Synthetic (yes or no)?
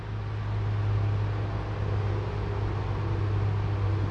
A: no